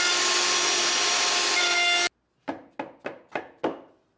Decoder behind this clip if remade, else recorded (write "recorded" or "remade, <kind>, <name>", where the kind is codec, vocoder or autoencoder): recorded